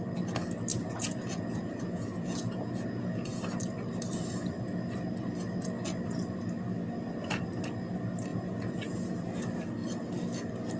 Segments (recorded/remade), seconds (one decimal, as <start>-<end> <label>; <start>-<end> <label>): 0.0-0.7 recorded; 0.7-3.4 remade; 3.4-8.3 recorded; 8.3-9.2 remade; 9.2-10.8 recorded